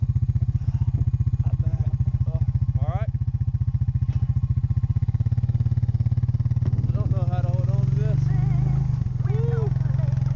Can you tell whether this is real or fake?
real